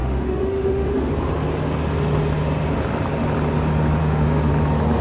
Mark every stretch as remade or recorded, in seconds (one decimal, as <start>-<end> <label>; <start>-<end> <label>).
0.0-1.1 remade; 1.1-4.0 recorded; 4.0-4.5 remade; 4.5-5.0 recorded